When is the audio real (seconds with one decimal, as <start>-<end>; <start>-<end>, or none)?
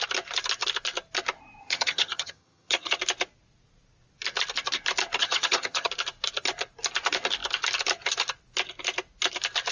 0.0-1.6; 3.0-5.2; 5.9-9.7